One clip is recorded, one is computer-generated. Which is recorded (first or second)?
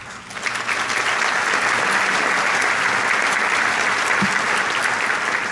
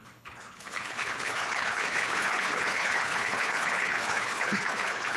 first